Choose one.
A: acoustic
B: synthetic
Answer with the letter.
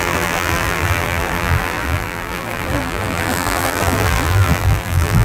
B